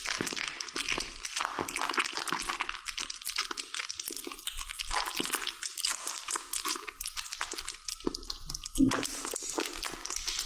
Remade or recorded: recorded